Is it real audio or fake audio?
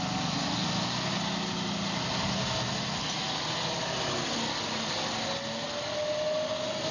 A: real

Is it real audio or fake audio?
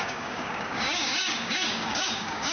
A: fake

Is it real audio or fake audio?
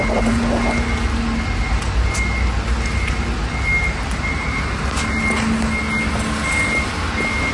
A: real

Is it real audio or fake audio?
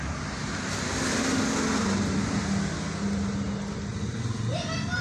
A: real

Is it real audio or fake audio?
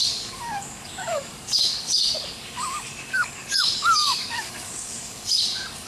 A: fake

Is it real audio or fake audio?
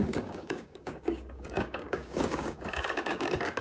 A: fake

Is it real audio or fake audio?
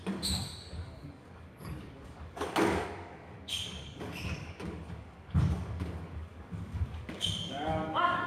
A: fake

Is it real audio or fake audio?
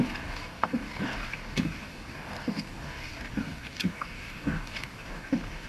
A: fake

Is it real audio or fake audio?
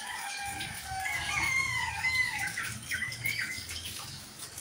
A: fake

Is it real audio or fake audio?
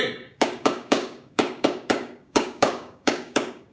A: fake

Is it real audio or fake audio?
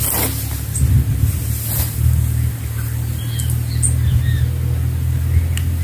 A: real